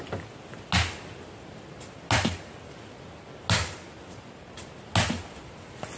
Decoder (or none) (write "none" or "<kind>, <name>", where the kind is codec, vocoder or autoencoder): none